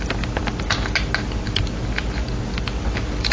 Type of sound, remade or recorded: recorded